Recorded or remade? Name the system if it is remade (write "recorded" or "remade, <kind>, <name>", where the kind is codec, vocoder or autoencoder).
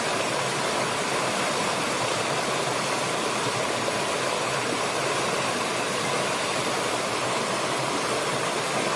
recorded